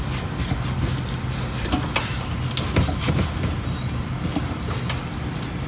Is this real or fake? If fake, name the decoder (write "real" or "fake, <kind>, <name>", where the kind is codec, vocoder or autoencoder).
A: real